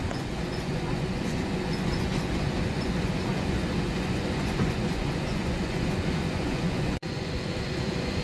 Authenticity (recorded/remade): remade